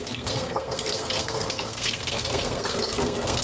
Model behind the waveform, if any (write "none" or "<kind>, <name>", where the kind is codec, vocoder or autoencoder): codec, SNAC